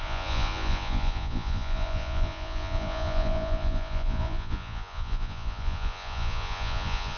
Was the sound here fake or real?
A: fake